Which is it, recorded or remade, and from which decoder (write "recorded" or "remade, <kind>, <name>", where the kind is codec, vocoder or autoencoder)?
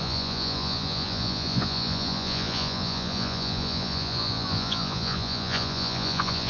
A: remade, vocoder, Vocos